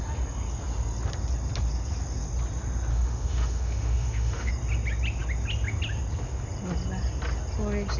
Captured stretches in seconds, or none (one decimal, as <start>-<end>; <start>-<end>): 0.0-2.9; 4.5-8.0